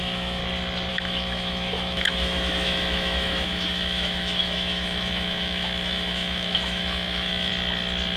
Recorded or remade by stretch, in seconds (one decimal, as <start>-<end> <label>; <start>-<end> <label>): 0.0-0.4 remade; 0.4-0.9 recorded; 0.9-7.5 remade; 7.5-8.2 recorded